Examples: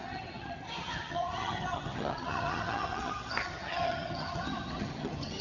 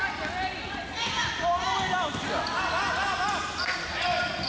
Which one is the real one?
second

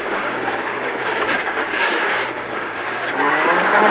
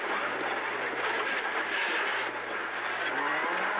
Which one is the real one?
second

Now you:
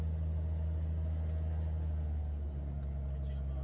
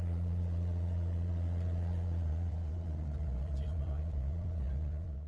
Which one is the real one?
first